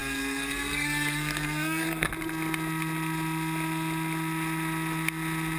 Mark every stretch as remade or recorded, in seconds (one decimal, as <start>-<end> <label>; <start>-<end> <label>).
0.0-2.1 remade; 2.1-5.6 recorded

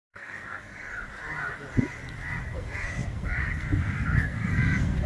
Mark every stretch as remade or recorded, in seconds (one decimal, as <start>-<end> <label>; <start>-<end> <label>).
0.0-0.9 remade; 0.9-2.4 recorded; 2.4-5.1 remade